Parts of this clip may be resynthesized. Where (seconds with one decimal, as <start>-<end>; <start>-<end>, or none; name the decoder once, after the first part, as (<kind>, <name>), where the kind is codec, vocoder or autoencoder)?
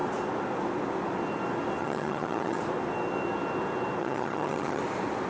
1.8-2.6 (vocoder, HiFi-GAN); 4.0-4.8